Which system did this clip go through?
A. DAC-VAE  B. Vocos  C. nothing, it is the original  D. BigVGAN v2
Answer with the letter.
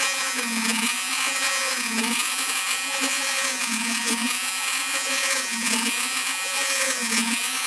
B